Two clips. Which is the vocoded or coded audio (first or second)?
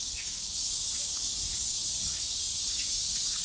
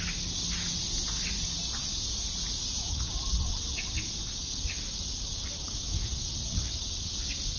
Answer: first